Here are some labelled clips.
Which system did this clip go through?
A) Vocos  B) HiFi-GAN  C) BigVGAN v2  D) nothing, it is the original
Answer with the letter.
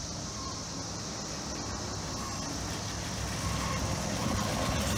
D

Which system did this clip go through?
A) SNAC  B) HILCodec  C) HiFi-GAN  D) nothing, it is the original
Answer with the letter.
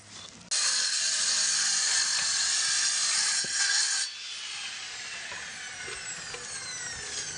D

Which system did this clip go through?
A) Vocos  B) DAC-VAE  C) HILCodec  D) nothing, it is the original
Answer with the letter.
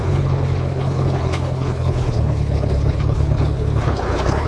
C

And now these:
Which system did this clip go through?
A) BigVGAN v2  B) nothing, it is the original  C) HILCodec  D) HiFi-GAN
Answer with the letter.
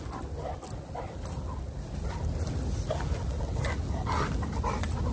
B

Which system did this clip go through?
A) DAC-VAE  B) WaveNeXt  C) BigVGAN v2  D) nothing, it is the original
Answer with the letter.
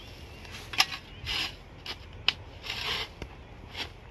D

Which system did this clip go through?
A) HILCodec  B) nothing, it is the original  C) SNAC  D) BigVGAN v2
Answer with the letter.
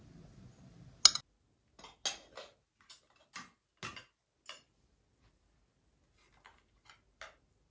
B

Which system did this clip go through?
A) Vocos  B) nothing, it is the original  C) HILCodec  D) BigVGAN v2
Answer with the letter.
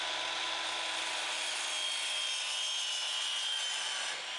B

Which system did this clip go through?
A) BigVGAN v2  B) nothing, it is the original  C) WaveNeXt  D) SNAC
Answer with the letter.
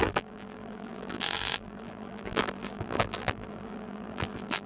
A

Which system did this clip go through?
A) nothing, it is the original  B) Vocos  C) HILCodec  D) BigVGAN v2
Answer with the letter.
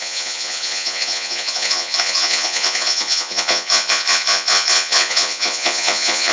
B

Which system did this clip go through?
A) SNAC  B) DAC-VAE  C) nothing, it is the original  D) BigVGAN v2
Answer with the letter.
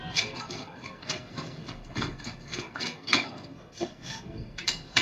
A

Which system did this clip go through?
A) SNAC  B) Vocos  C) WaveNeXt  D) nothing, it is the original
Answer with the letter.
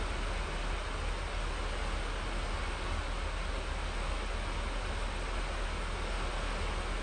D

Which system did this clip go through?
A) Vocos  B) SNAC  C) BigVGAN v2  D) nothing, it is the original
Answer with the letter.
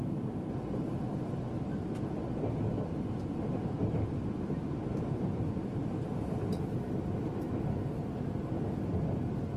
D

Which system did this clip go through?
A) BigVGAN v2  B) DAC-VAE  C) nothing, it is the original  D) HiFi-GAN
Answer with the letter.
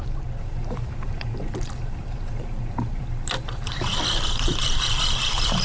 A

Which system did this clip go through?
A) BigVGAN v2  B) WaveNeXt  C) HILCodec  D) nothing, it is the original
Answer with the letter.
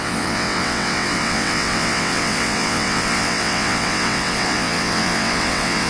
B